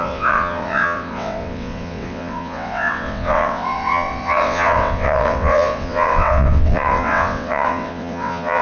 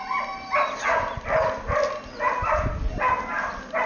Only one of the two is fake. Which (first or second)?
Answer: first